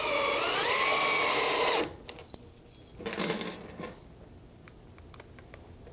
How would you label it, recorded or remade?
recorded